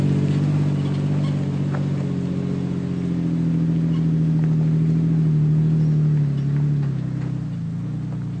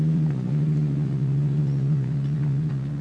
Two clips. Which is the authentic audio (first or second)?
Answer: first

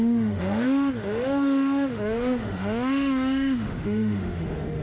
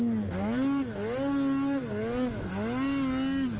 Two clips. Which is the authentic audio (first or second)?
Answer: second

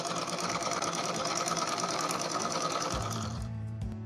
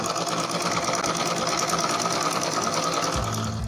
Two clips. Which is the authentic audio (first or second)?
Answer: second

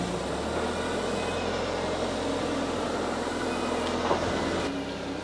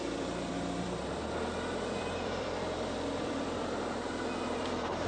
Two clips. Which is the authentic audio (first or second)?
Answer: first